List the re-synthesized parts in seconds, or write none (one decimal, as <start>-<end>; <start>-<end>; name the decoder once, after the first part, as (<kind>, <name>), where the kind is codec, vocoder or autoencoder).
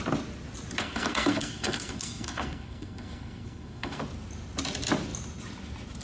0.8-4.0 (codec, SNAC)